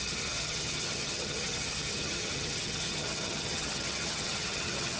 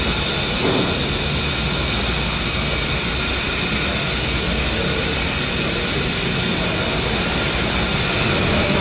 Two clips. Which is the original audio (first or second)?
second